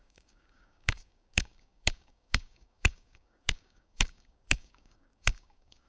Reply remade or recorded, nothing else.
remade